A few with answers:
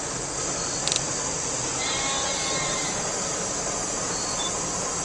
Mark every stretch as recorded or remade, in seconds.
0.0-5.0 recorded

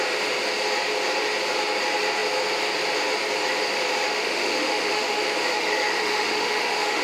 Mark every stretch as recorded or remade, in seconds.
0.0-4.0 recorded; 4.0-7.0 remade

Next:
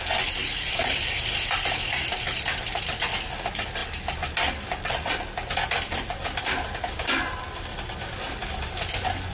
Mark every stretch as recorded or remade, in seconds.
0.0-0.4 recorded; 0.4-1.1 remade; 1.1-9.3 recorded

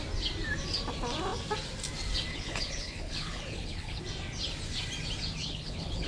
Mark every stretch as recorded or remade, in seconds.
0.0-2.3 recorded; 2.3-4.0 remade; 4.0-5.4 recorded; 5.4-6.1 remade

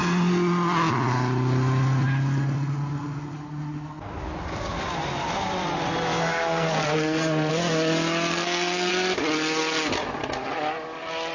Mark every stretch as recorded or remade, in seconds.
0.0-6.3 recorded; 6.3-7.5 remade; 7.5-8.3 recorded; 8.3-8.9 remade; 8.9-11.3 recorded